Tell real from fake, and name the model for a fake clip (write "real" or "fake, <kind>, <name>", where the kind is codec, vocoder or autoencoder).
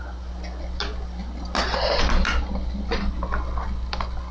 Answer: real